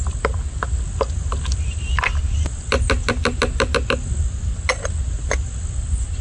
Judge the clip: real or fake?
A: real